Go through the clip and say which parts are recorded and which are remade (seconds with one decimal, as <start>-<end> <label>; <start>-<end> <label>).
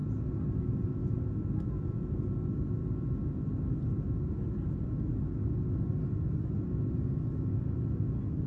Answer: 0.0-8.5 recorded